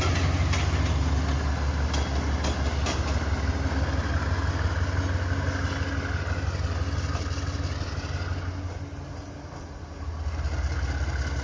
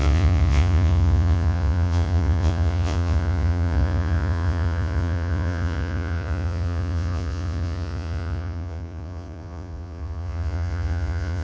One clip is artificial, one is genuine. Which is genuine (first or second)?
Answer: first